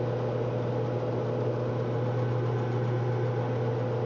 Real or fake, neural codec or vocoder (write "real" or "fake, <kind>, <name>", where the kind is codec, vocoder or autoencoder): real